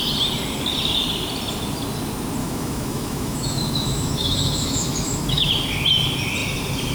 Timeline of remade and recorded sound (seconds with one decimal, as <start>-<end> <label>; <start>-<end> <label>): 0.0-2.4 recorded; 2.4-5.5 remade; 5.5-6.9 recorded